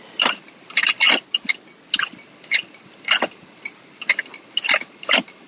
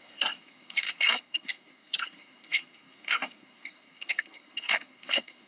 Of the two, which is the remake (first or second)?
second